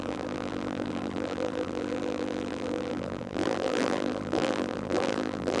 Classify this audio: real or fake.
fake